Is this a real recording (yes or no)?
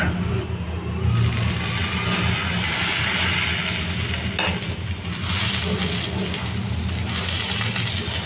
yes